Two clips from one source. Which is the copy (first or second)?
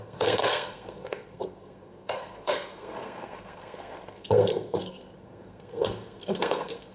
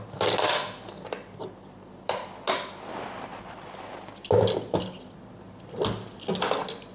first